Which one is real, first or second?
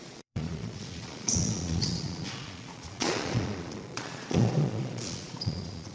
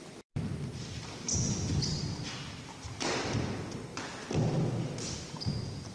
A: second